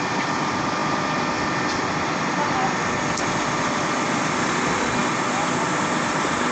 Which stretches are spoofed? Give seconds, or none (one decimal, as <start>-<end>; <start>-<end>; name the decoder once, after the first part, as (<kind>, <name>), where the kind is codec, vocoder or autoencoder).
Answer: none

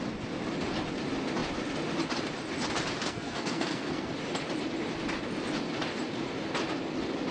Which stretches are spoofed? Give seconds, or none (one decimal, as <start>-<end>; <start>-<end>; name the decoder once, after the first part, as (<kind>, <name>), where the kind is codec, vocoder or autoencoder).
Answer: 3.0-4.1 (codec, SNAC)

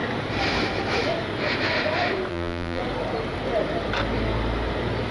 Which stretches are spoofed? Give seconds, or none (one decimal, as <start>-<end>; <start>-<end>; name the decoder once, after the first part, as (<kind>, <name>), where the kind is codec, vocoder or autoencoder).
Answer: 2.3-2.8 (vocoder, BigVGAN v2)

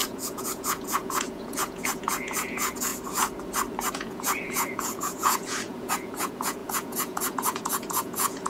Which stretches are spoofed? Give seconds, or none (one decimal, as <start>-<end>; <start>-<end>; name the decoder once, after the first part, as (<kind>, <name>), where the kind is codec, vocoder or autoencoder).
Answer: 0.0-2.9 (vocoder, Vocos); 3.9-8.5

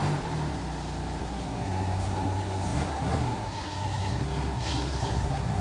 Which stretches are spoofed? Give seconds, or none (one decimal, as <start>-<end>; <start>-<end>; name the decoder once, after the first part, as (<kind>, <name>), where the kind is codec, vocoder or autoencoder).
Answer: 1.2-5.6 (codec, SNAC)